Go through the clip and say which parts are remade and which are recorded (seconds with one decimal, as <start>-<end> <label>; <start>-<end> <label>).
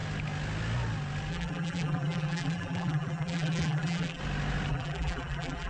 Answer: 0.0-1.3 recorded; 1.3-4.2 remade; 4.2-4.7 recorded; 4.7-5.7 remade